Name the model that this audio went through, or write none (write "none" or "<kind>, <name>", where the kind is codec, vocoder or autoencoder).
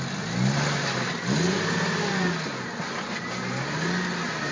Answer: none